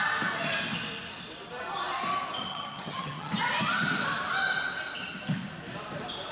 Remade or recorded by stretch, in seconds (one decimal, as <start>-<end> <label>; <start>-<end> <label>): 0.0-2.5 recorded; 2.5-3.3 remade; 3.3-6.3 recorded